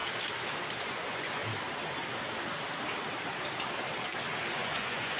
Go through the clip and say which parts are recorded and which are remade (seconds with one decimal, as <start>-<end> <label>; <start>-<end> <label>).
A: 0.0-0.8 recorded; 0.8-1.4 remade; 1.4-4.5 recorded; 4.5-5.2 remade